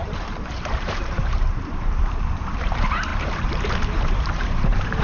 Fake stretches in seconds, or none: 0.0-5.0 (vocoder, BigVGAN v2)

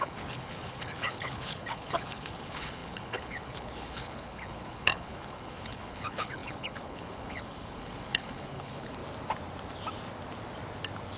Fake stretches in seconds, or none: 0.0-9.0 (codec, HILCodec)

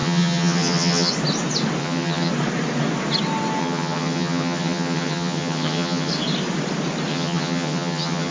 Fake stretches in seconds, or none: 0.0-1.1 (vocoder, HiFi-GAN); 1.8-2.3; 3.6-6.1; 7.1-8.3